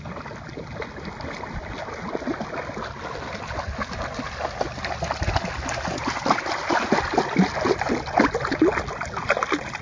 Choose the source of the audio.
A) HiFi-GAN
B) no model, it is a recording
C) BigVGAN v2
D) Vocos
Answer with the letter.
B